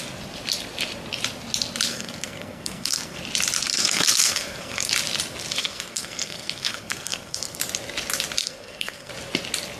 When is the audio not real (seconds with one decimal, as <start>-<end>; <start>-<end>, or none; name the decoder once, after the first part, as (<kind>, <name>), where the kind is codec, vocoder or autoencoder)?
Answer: 1.9-3.2 (codec, SNAC); 3.7-4.9; 5.6-7.6; 8.4-9.1